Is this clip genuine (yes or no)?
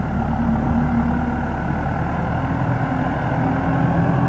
yes